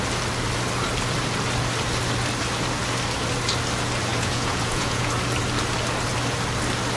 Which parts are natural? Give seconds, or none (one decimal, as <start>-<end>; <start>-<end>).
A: 0.0-4.1; 5.1-7.0